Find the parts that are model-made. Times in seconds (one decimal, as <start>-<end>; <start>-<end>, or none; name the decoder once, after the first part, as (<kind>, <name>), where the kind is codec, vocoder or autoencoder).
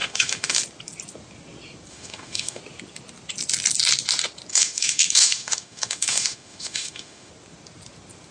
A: 0.0-0.6 (autoencoder, DAC-VAE); 1.9-2.6; 4.5-7.3